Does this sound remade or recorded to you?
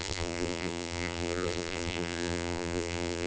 remade